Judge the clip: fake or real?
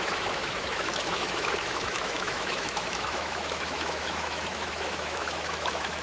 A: fake